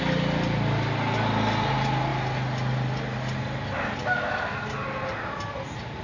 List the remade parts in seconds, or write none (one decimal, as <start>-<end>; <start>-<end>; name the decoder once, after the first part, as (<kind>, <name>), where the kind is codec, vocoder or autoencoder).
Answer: none